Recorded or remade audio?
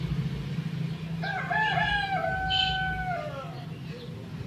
recorded